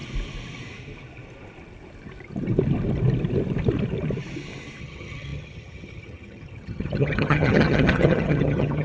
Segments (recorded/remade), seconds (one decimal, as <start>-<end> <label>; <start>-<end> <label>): 0.0-4.8 recorded; 4.8-8.8 remade